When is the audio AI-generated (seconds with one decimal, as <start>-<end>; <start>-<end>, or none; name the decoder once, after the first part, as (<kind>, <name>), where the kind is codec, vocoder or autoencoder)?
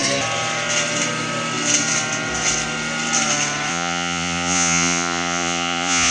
3.7-6.1 (vocoder, Vocos)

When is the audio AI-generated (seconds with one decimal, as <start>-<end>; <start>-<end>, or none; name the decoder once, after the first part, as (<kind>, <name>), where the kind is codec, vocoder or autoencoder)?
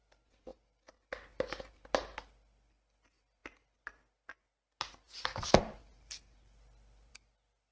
none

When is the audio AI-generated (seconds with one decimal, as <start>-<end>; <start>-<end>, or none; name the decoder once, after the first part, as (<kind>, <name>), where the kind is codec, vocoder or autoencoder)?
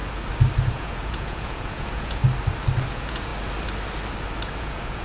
0.7-2.2 (vocoder, Vocos); 2.9-3.3; 4.6-5.0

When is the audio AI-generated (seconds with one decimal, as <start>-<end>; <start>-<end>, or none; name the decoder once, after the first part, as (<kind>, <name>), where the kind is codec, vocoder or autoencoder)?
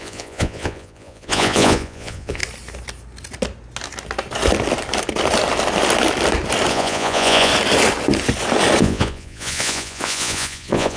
0.0-2.4 (vocoder, Vocos); 6.7-7.5; 8.8-11.0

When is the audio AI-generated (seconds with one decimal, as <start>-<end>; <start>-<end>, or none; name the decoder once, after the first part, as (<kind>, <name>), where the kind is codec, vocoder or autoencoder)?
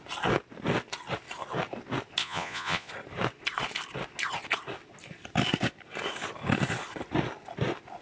2.2-2.9 (vocoder, Vocos)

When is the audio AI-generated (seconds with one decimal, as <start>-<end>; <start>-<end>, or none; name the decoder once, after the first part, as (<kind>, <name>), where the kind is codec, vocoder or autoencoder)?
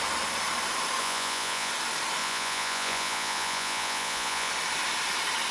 1.0-1.7 (vocoder, Vocos); 2.2-4.5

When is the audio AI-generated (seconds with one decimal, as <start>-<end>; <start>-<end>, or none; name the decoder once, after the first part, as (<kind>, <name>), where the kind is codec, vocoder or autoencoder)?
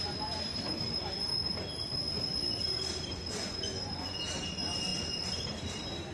3.1-4.2 (vocoder, Vocos)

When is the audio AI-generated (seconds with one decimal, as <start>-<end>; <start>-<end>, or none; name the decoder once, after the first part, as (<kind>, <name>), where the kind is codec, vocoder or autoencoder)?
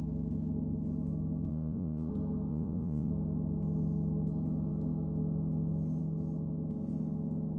1.5-2.1 (vocoder, Vocos); 2.5-3.1